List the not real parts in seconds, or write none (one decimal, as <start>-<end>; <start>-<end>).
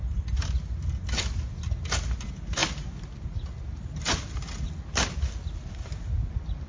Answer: none